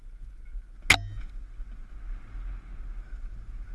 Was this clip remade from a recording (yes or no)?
no